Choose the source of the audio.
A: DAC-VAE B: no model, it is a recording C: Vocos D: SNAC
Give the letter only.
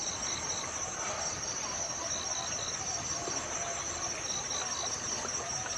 B